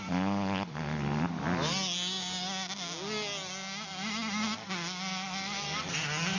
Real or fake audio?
real